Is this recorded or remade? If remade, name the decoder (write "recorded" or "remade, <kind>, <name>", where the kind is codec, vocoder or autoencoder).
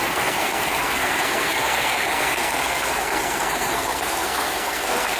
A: remade, codec, SNAC